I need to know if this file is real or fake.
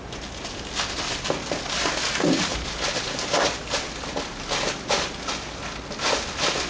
real